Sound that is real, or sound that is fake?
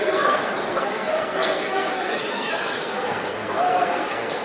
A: fake